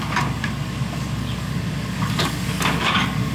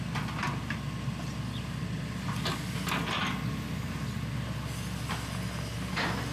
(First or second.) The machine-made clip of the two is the first